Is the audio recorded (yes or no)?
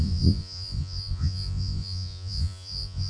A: no